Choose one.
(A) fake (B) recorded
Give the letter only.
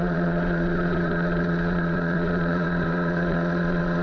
A